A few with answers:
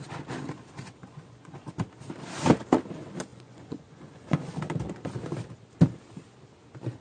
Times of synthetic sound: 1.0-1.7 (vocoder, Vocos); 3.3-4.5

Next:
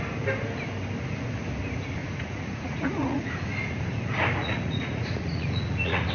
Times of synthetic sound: 2.0-3.3 (vocoder, Vocos); 4.4-6.1

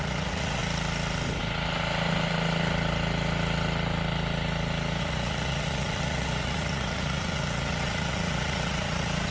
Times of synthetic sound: 0.0-0.6 (vocoder, Vocos); 5.0-9.3

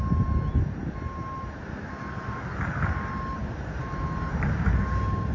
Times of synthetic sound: none

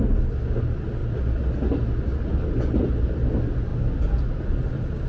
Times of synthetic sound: none

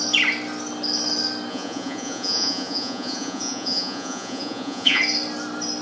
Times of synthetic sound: 1.5-5.0 (vocoder, Vocos)

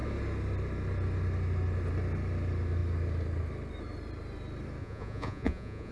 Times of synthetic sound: 4.8-5.9 (vocoder, Vocos)